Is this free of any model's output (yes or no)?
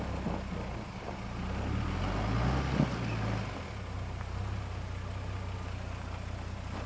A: yes